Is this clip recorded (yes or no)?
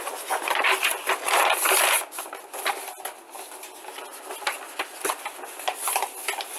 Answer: yes